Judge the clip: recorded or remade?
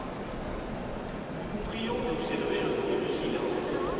recorded